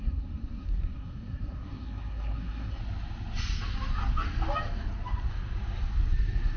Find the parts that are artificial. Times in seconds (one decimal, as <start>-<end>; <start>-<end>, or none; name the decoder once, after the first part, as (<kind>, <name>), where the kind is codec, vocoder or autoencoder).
0.0-2.8 (codec, SNAC)